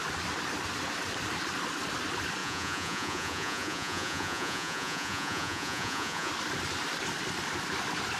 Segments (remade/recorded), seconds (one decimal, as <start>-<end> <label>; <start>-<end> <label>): 0.0-2.4 recorded; 2.4-6.3 remade; 6.3-8.2 recorded